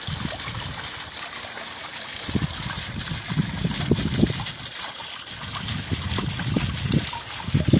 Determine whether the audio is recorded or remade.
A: recorded